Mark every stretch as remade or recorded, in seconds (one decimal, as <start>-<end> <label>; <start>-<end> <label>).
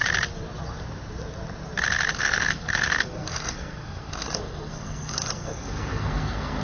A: 0.0-2.2 recorded; 2.2-6.6 remade